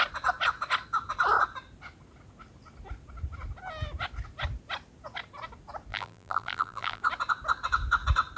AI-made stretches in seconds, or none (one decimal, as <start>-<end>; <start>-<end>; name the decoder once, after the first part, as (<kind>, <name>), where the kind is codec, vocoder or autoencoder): 5.9-7.0 (vocoder, BigVGAN v2)